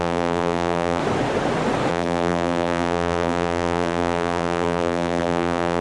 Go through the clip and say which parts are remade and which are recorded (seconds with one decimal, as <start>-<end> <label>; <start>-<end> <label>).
0.0-1.0 remade; 1.0-1.9 recorded; 1.9-5.8 remade